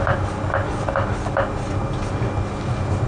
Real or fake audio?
real